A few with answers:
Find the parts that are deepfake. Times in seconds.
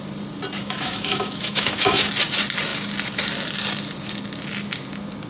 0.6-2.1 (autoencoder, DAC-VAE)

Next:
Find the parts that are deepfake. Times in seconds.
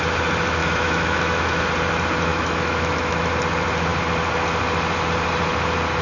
0.6-1.6 (autoencoder, DAC-VAE); 2.3-3.3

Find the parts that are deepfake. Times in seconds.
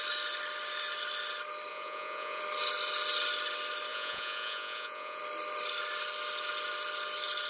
1.7-2.4 (vocoder, Vocos); 3.9-5.2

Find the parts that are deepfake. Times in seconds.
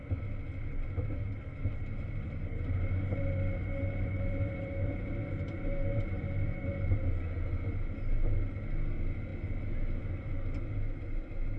1.6-6.7 (vocoder, BigVGAN v2)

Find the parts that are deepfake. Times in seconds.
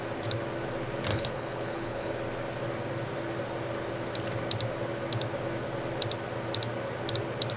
1.1-2.1 (codec, HILCodec)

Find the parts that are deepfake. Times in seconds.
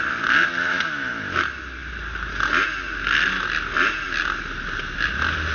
0.7-1.4 (autoencoder, DAC-VAE)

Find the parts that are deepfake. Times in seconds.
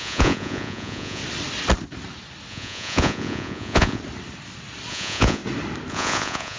0.0-1.2 (vocoder, Vocos); 2.5-4.0; 4.9-5.4; 5.9-6.6